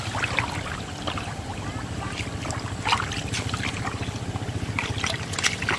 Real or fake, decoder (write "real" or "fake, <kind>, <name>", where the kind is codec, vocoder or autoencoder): real